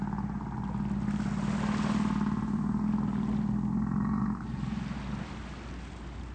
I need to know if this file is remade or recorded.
recorded